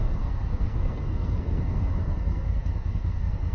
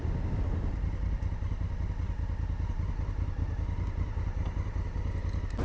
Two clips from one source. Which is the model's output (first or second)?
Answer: first